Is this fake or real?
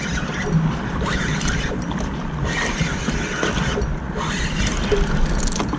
real